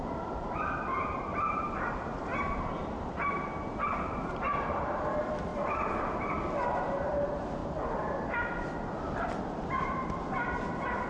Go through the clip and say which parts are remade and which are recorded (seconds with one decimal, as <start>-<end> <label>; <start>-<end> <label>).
0.0-2.8 remade; 2.8-3.3 recorded; 3.3-5.5 remade; 5.5-6.7 recorded; 6.7-7.6 remade; 7.6-11.1 recorded